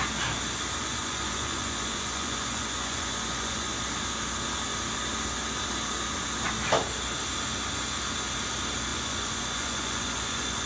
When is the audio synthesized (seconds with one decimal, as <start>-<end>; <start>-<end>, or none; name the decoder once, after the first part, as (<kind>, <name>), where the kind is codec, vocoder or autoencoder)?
0.8-3.7 (vocoder, Vocos); 8.9-10.7